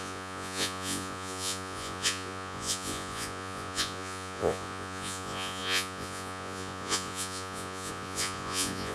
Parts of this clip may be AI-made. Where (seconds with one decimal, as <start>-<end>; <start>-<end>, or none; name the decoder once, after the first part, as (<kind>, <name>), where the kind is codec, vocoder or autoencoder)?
0.0-8.9 (vocoder, Vocos)